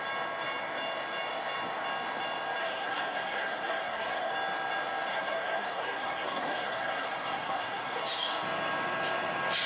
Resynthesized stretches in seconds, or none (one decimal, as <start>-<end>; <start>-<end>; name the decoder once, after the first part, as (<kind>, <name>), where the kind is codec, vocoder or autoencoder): 2.6-4.3 (codec, SNAC); 5.1-8.0